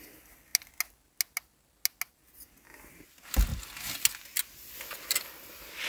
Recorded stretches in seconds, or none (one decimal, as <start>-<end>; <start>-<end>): 0.0-5.9